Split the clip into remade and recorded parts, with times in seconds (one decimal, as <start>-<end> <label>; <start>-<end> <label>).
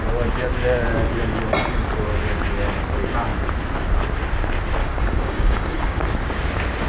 0.0-4.8 recorded; 4.8-6.0 remade; 6.0-6.9 recorded